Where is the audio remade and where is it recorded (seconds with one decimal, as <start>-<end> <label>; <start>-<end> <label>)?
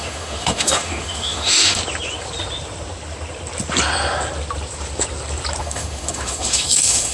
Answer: 0.0-1.8 remade; 1.8-5.6 recorded; 5.6-7.1 remade